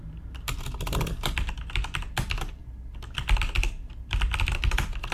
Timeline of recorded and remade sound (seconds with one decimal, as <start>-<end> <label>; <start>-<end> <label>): 0.0-0.5 remade; 0.5-5.1 recorded